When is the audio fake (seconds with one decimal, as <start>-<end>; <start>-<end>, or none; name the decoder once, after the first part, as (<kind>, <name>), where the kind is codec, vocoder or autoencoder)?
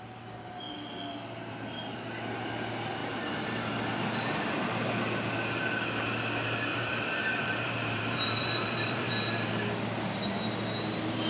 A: 6.7-9.1 (vocoder, BigVGAN v2)